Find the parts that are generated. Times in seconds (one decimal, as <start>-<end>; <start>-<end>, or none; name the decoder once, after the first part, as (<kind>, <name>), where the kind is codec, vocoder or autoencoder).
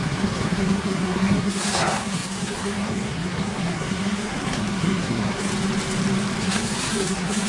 0.0-5.5 (codec, SNAC); 6.4-7.5